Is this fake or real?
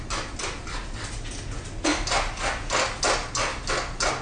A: real